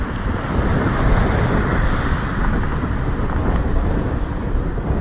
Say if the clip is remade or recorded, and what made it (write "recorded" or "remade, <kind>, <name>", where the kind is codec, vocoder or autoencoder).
remade, vocoder, BigVGAN v2